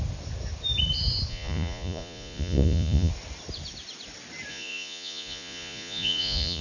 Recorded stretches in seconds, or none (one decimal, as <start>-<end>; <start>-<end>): 0.0-1.3; 3.1-4.5